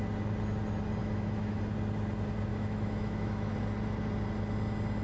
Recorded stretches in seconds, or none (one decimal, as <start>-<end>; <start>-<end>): 0.0-1.0; 1.6-2.5; 3.5-5.0